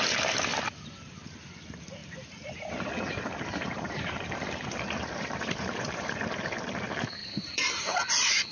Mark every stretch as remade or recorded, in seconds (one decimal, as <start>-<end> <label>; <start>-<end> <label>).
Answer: 0.0-2.0 recorded; 2.0-6.2 remade; 6.2-7.2 recorded; 7.2-8.5 remade